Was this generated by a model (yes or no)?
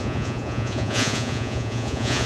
yes